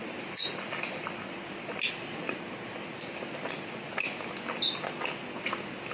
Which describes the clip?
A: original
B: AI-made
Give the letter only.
A